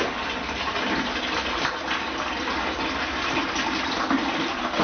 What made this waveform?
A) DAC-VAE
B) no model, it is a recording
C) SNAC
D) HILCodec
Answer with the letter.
B